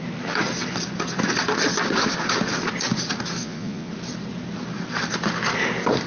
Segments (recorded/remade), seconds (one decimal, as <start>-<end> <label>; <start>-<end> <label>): 0.0-3.4 recorded; 3.4-3.9 remade; 3.9-6.1 recorded

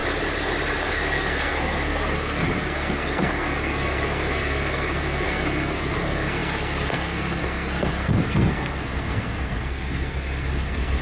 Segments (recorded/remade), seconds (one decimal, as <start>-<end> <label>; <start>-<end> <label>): 0.0-0.9 recorded; 0.9-11.0 remade

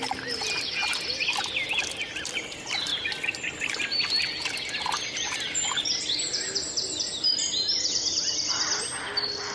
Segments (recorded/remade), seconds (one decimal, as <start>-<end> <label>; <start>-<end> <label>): 0.0-2.9 remade; 2.9-5.1 recorded; 5.1-9.5 remade